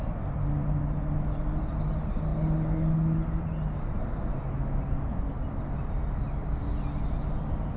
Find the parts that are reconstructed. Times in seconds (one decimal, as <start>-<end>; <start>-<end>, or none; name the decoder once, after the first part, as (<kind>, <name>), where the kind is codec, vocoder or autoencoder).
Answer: none